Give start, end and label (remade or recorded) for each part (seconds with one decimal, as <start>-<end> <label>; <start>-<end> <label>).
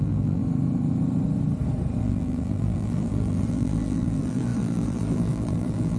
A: 0.0-0.4 remade; 0.4-2.0 recorded; 2.0-6.0 remade